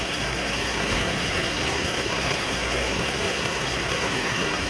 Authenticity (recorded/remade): remade